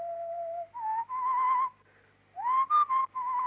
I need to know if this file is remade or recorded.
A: recorded